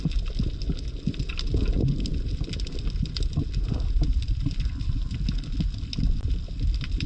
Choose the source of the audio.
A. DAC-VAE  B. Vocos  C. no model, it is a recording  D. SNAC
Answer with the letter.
C